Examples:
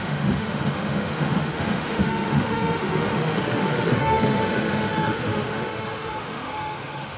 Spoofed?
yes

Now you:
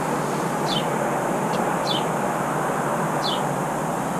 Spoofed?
no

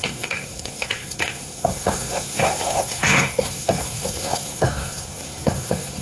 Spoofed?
yes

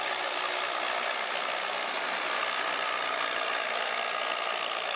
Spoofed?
no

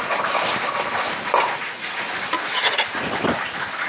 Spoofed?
no